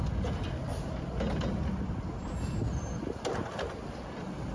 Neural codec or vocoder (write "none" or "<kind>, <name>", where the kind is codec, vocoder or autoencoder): none